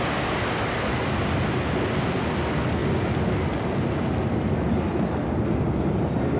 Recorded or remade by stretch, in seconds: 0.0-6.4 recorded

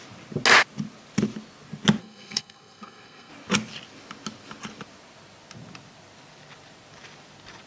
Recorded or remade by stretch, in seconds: 0.0-2.0 recorded; 2.0-3.3 remade; 3.3-7.7 recorded

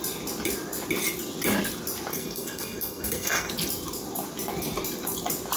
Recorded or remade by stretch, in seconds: 0.0-2.1 recorded; 2.1-3.5 remade; 3.5-5.6 recorded

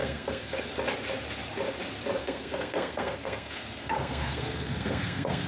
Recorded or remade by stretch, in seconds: 0.0-0.7 remade; 0.7-2.2 recorded; 2.2-5.5 remade

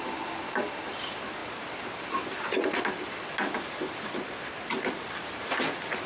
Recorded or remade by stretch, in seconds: 0.0-6.1 recorded

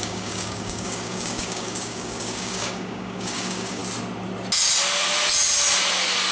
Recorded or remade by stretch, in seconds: 0.0-3.8 remade; 3.8-6.3 recorded